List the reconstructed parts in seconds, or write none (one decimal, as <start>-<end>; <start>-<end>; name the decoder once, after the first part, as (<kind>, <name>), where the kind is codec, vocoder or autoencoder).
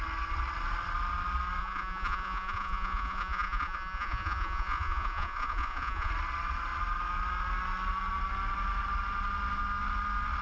1.6-6.1 (vocoder, Vocos)